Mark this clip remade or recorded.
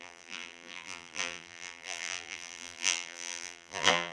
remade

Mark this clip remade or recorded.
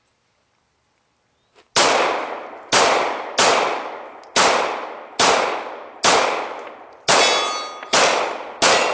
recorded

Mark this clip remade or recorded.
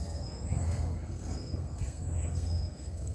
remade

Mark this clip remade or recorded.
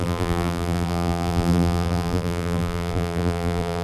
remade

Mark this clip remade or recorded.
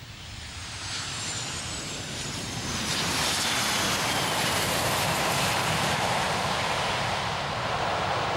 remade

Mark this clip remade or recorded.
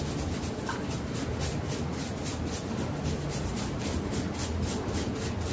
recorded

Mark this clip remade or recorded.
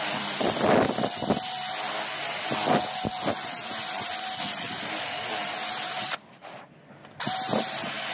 recorded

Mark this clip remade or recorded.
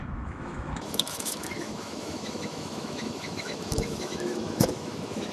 remade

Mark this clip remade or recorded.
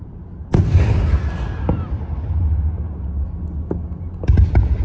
recorded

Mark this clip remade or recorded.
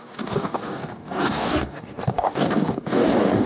remade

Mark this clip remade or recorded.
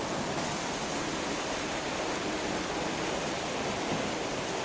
recorded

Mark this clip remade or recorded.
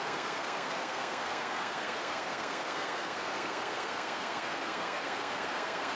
remade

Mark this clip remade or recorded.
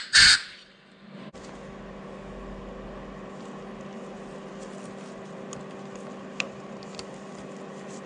recorded